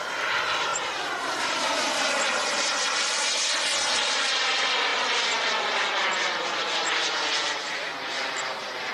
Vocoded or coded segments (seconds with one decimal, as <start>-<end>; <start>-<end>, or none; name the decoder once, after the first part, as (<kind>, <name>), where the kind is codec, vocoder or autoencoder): 0.7-1.9 (vocoder, BigVGAN v2); 2.7-3.3